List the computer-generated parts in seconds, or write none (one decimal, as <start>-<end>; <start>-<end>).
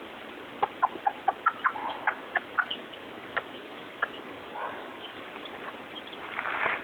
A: 1.8-5.3